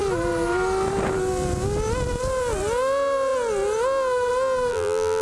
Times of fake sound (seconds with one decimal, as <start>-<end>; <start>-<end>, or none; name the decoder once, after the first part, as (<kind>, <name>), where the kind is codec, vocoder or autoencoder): 4.7-5.2 (vocoder, BigVGAN v2)

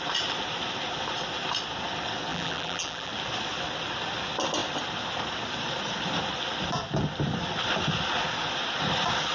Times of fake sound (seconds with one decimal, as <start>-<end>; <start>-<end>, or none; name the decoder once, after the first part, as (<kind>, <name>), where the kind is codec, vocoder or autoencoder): 2.3-3.1 (vocoder, BigVGAN v2)

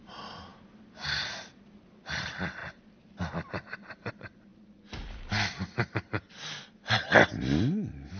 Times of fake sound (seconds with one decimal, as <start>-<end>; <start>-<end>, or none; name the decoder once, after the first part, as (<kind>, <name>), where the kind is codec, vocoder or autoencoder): 2.6-4.1 (vocoder, BigVGAN v2)